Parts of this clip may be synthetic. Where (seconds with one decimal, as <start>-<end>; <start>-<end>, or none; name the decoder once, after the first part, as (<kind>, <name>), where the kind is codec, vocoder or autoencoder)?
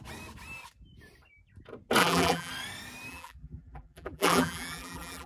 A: 2.0-2.5 (vocoder, BigVGAN v2); 3.1-5.3